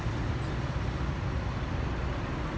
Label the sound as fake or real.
real